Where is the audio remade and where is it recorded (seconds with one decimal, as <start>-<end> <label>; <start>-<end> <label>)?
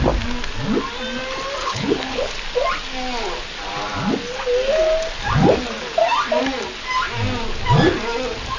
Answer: 0.0-1.6 recorded; 1.6-2.3 remade; 2.3-8.6 recorded